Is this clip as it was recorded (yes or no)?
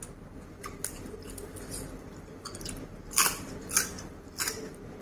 yes